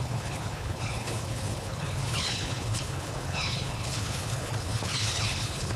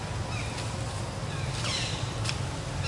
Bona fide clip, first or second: second